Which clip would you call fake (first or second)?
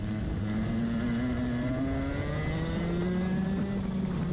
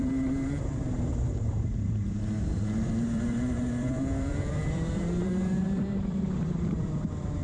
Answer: second